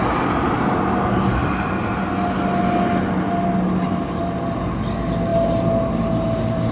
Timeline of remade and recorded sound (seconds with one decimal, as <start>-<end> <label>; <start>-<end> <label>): 0.0-6.7 recorded